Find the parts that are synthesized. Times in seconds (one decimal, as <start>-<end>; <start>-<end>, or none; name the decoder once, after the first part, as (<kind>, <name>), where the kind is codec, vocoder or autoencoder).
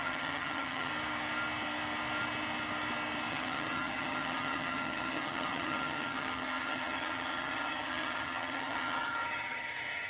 0.0-0.9 (vocoder, HiFi-GAN); 3.3-10.1